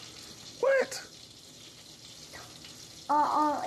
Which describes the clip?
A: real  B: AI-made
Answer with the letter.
A